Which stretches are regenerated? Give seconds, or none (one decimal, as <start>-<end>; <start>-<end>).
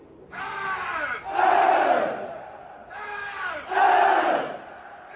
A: none